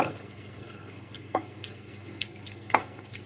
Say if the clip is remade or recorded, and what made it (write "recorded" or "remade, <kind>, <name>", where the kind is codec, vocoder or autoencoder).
remade, codec, SNAC